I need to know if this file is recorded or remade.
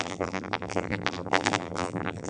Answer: remade